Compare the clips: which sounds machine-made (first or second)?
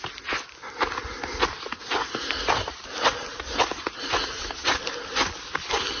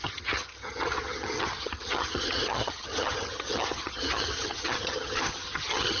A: second